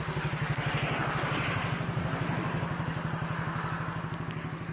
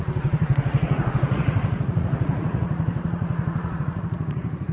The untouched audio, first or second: first